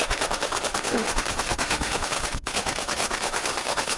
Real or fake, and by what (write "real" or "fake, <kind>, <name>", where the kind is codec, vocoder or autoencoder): fake, autoencoder, DAC-VAE